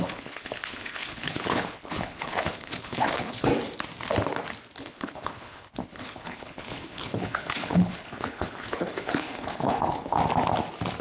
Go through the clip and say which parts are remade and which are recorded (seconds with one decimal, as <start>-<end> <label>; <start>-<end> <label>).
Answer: 0.0-3.5 remade; 3.5-4.8 recorded; 4.8-10.2 remade; 10.2-11.0 recorded